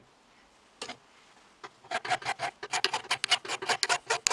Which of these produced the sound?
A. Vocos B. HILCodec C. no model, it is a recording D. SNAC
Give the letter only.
C